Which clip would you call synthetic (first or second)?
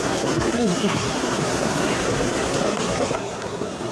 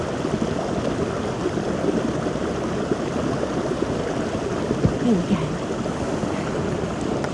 first